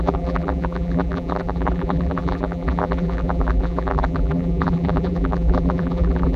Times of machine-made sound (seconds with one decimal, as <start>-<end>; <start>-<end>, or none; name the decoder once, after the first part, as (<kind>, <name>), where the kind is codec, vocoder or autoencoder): 0.0-6.4 (vocoder, BigVGAN v2)